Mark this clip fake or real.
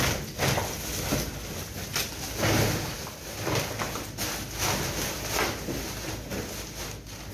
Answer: real